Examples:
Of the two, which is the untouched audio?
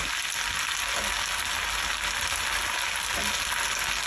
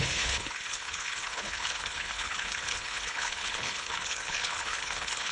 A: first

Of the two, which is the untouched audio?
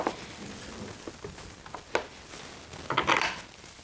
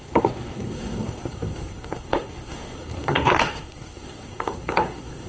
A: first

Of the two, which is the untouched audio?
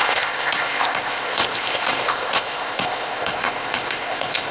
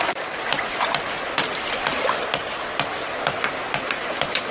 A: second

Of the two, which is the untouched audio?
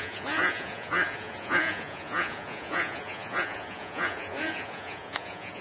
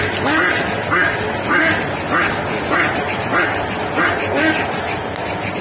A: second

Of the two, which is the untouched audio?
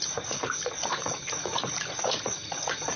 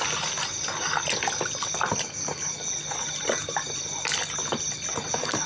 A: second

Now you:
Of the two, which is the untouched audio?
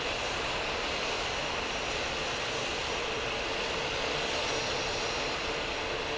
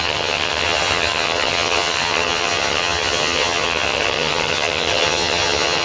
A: first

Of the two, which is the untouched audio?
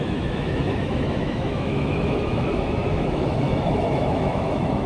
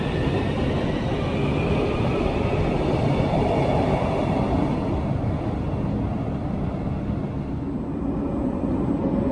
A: second